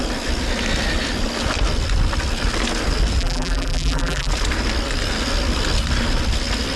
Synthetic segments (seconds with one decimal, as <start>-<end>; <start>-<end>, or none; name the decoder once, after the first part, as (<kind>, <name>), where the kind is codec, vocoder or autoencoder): 3.2-4.3 (vocoder, BigVGAN v2)